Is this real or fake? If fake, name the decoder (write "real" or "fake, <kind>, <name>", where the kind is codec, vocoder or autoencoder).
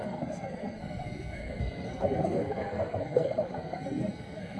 fake, codec, SNAC